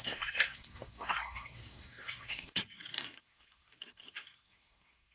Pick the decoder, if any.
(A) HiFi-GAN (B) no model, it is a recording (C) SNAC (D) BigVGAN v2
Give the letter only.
C